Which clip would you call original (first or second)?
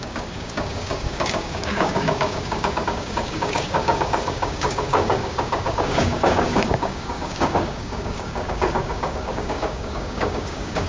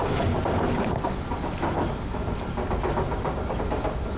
second